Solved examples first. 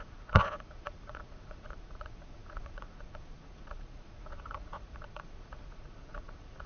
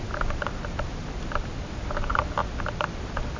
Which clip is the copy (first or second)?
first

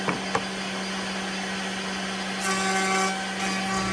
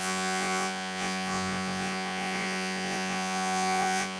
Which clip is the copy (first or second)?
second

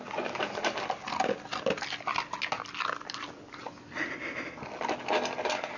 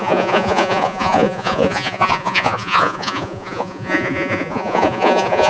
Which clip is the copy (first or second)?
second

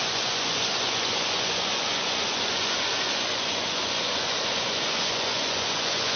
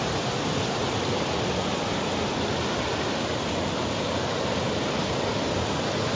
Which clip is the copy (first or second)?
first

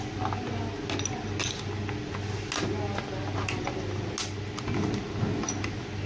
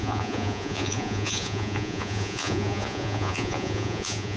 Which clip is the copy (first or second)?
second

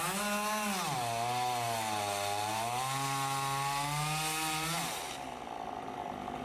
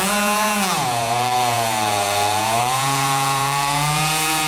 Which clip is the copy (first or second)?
second